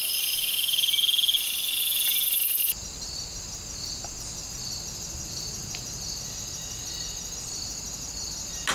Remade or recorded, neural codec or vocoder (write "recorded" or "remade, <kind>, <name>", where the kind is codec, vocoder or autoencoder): recorded